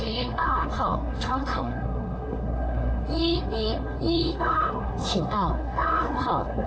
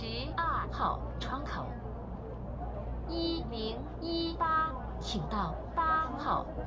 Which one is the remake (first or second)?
first